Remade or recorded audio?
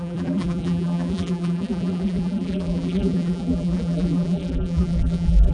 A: remade